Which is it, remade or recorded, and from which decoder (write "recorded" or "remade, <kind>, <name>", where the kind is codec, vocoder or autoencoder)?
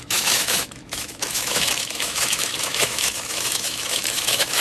remade, autoencoder, DAC-VAE